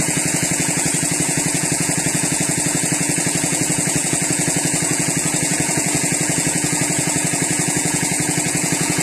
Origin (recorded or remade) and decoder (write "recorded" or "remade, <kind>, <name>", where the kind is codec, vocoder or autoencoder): remade, vocoder, Vocos